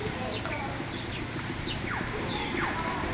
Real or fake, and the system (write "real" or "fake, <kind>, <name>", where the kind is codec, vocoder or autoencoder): real